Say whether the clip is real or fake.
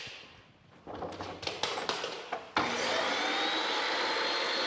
real